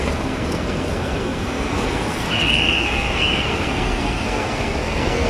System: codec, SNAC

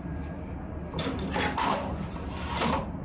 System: none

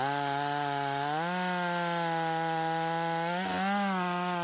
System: none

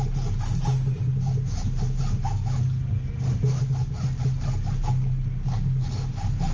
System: none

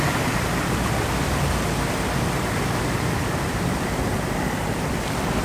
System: none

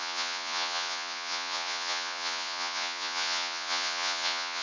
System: vocoder, Vocos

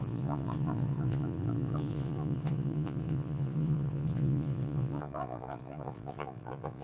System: vocoder, Vocos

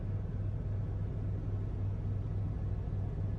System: none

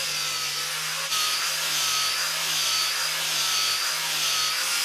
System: none